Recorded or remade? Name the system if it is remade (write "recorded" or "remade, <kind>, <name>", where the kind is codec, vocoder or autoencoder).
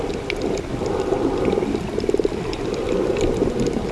recorded